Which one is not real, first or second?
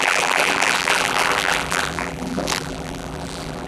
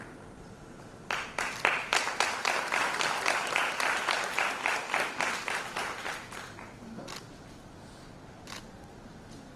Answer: first